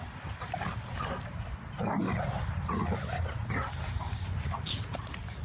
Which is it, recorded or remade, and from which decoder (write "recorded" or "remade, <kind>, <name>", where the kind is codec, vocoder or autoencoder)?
recorded